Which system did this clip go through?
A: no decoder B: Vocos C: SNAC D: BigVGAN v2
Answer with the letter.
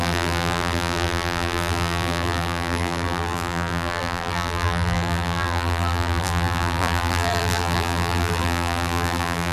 D